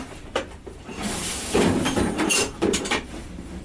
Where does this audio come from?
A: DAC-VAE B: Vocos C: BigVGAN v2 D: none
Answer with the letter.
C